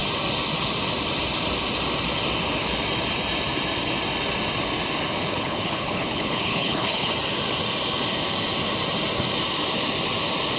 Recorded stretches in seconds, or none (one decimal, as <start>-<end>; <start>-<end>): 0.0-5.3; 7.1-10.6

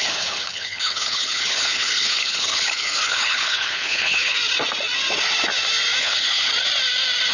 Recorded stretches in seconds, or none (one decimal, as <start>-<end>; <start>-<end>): 4.4-6.0; 6.5-7.3

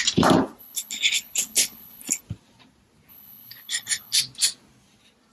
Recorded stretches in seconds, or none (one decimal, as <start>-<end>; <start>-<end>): 0.0-0.6; 2.2-3.1; 4.2-5.3

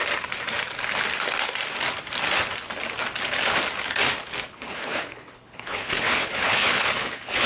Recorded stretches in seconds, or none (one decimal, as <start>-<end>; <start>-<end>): 0.0-4.5

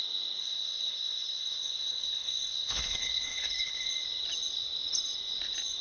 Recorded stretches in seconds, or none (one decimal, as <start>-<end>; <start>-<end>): 0.0-0.4; 3.9-5.8